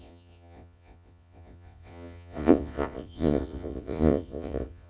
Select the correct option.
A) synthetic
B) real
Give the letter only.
A